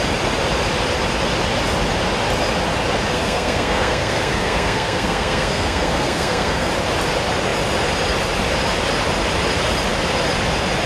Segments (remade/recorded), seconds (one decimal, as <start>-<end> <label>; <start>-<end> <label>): 0.0-3.1 recorded; 3.1-6.7 remade; 6.7-10.9 recorded